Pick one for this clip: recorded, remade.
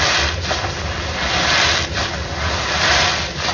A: recorded